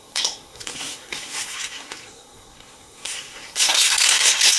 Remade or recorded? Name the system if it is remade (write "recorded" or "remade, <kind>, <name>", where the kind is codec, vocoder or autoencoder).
remade, codec, SNAC